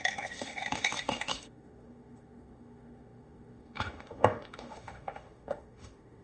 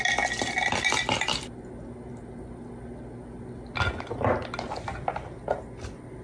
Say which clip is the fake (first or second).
first